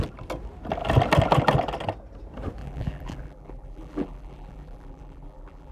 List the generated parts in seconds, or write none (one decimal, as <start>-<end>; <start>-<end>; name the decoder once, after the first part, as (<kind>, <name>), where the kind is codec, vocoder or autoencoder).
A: 2.6-5.7 (vocoder, BigVGAN v2)

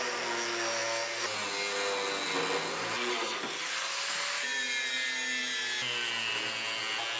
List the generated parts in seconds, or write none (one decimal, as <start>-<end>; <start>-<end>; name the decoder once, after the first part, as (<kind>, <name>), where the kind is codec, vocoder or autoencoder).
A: none

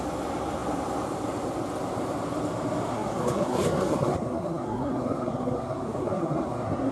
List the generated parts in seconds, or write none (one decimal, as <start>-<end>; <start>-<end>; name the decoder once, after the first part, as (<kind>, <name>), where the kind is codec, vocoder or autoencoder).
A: 2.9-6.9 (codec, SNAC)

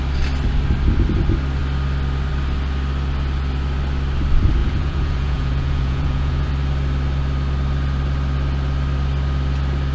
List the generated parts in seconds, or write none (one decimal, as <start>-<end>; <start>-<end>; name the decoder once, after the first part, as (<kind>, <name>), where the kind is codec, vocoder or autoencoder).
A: 4.6-6.5 (vocoder, Vocos)